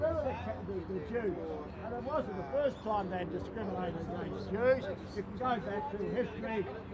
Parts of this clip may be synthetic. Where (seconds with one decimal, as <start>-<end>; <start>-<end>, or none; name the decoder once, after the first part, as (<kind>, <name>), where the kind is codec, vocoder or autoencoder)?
none